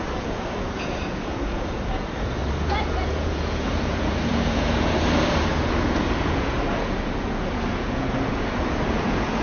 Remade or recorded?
remade